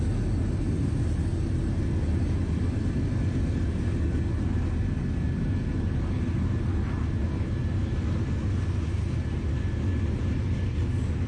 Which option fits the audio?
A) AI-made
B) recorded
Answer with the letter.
B